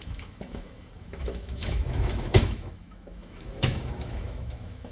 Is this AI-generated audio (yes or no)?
yes